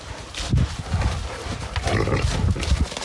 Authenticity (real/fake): real